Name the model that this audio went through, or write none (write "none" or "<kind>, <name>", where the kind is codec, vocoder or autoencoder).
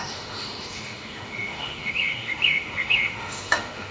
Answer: autoencoder, DAC-VAE